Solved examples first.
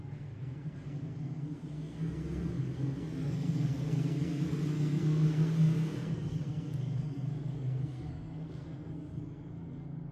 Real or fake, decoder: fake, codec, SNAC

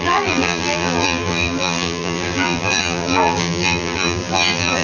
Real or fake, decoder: fake, vocoder, BigVGAN v2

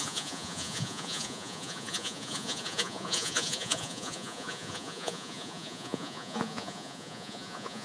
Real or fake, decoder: fake, vocoder, Vocos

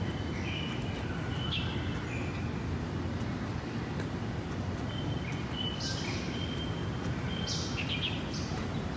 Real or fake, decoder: real